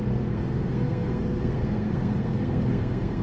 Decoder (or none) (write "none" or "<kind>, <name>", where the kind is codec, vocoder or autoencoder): codec, SNAC